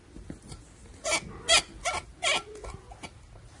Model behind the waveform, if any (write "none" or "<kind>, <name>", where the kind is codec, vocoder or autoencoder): none